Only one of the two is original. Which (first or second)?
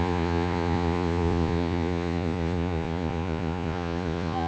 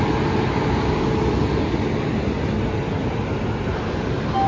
second